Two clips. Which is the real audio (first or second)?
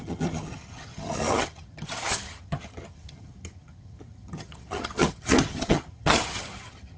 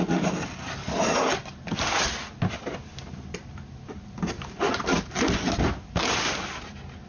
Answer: second